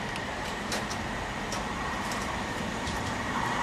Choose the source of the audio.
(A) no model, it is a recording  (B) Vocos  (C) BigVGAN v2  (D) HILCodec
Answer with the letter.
C